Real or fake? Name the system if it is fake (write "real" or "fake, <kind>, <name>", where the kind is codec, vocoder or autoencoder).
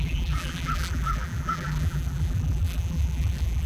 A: fake, vocoder, BigVGAN v2